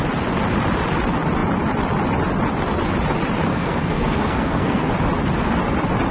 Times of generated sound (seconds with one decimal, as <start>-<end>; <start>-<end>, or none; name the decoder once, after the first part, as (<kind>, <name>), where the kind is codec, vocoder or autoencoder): 3.5-4.9 (codec, SNAC)